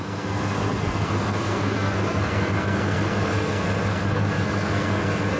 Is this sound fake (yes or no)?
yes